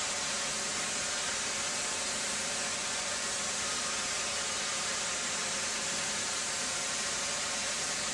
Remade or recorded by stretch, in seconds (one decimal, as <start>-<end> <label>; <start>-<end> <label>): 0.0-2.7 recorded; 2.7-3.3 remade; 3.3-8.1 recorded